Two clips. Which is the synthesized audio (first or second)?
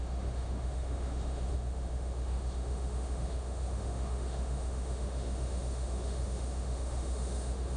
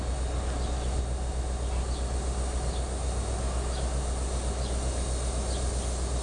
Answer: first